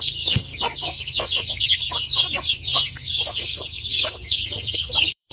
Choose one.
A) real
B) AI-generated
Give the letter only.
B